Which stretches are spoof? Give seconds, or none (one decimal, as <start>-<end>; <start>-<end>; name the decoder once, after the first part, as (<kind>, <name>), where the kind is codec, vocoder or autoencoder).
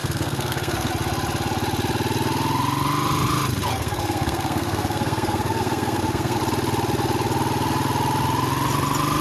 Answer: 0.0-0.9 (codec, SNAC); 3.7-6.4